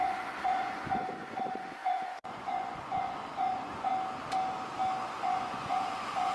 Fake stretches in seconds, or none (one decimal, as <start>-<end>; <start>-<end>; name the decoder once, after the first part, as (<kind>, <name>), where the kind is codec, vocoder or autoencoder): 0.0-3.9 (vocoder, Vocos); 5.2-6.3